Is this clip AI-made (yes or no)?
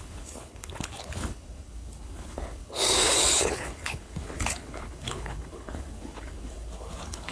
yes